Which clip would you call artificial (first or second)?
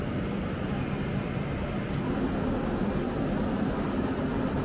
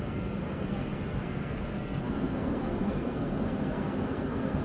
second